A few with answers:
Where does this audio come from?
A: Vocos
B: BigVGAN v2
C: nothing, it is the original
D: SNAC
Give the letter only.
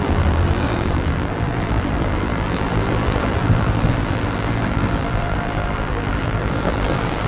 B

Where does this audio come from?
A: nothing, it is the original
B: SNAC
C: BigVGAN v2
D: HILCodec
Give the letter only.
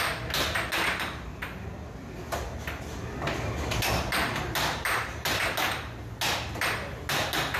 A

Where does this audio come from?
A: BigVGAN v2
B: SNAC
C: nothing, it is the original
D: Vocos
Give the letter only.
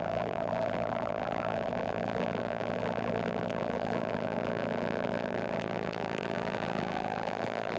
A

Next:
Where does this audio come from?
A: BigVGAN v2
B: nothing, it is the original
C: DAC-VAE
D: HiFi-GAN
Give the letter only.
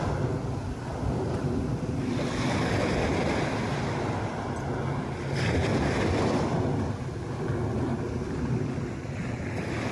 B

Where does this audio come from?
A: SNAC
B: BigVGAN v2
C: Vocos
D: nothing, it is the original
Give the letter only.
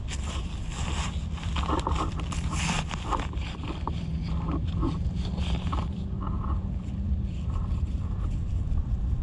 B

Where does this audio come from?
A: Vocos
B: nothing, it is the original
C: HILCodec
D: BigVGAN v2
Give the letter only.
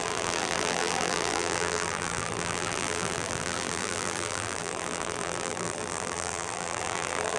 D